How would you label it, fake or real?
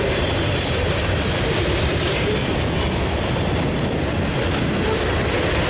fake